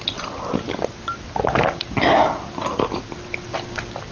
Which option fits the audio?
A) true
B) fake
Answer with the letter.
A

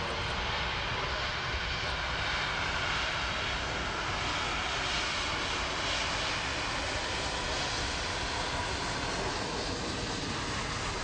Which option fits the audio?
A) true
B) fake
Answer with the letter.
A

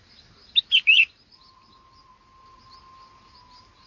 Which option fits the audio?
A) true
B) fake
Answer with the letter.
A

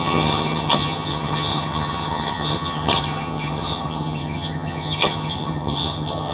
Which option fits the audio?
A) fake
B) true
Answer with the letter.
A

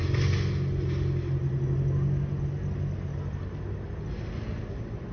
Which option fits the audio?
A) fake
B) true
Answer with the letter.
B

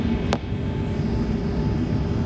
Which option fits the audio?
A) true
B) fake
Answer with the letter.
A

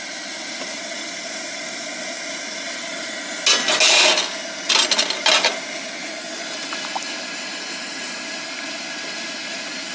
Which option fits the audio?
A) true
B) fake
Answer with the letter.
A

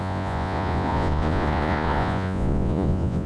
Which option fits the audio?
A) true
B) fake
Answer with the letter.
B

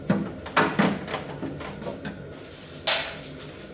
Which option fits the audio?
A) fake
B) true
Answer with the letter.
B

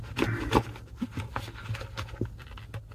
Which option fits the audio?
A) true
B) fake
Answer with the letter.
A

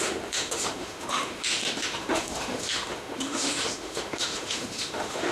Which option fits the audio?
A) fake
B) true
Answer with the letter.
A